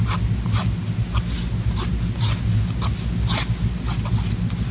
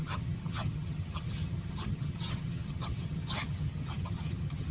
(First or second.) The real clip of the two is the first